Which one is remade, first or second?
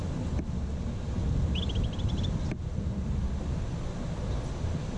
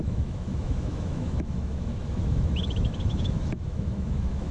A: second